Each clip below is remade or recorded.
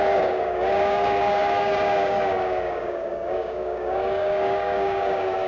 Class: remade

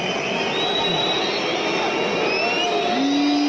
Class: recorded